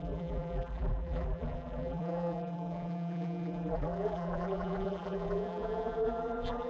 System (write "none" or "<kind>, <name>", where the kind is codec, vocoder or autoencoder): vocoder, BigVGAN v2